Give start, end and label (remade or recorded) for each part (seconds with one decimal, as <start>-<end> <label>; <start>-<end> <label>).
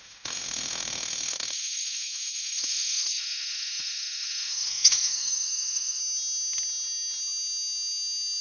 0.0-6.0 remade; 6.0-8.4 recorded